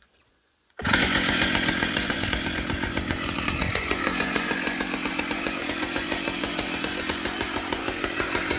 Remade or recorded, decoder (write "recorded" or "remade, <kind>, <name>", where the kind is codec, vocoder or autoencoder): remade, vocoder, Vocos